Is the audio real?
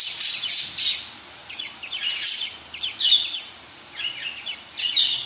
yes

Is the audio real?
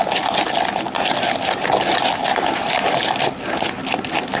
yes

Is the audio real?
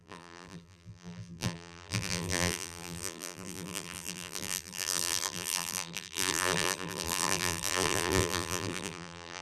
no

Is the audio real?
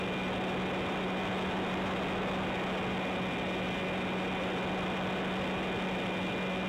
yes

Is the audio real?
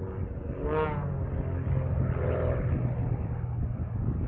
yes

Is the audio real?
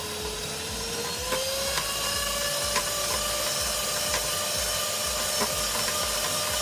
yes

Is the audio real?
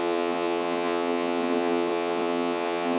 no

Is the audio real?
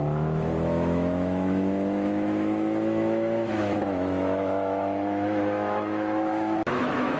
no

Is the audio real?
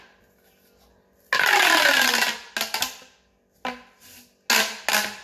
yes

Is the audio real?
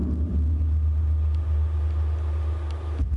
yes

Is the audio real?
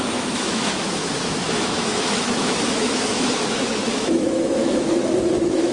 no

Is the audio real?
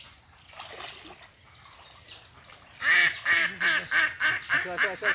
yes